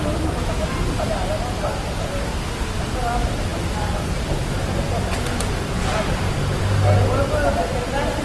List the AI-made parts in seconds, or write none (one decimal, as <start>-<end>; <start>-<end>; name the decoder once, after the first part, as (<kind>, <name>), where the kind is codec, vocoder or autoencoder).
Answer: none